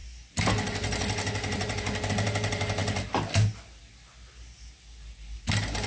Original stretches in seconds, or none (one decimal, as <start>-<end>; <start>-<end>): 0.0-5.9